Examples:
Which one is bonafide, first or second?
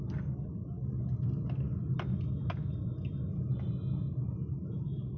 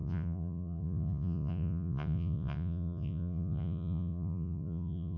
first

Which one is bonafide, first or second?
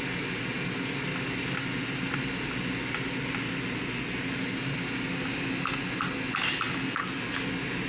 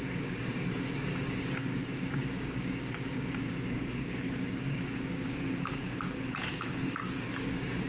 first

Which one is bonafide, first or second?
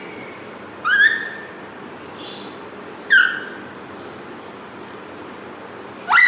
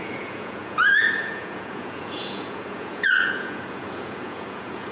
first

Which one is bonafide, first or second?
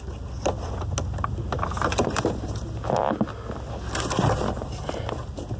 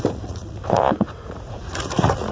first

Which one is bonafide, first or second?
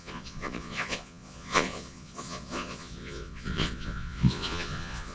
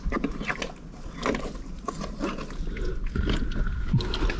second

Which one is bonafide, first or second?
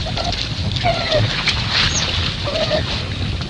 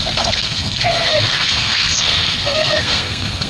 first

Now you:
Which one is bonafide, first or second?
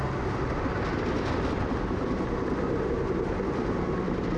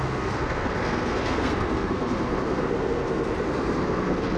first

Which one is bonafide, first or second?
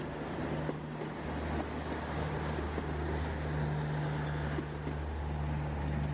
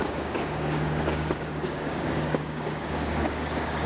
first